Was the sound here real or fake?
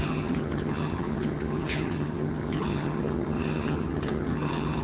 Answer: fake